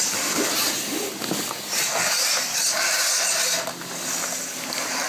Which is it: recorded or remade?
recorded